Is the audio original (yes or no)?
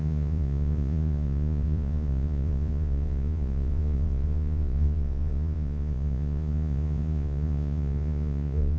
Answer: no